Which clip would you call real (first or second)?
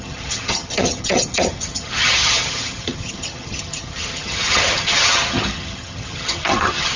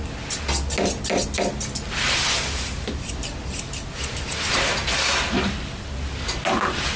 second